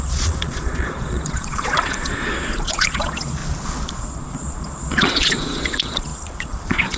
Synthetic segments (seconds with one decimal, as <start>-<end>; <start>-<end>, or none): 0.0-3.4; 3.9-7.0